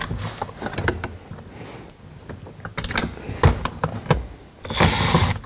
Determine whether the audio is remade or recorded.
recorded